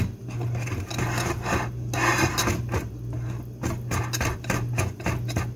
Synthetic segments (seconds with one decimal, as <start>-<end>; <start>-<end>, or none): none